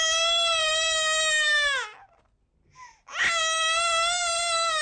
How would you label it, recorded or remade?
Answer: recorded